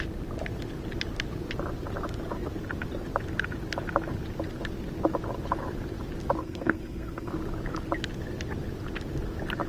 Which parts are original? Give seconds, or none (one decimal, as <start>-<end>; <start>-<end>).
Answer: 0.0-6.4; 7.3-9.7